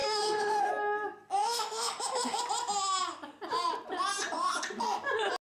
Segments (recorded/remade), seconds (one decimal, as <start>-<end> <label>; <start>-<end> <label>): 0.0-0.7 remade; 0.7-1.4 recorded; 1.4-2.4 remade; 2.4-5.5 recorded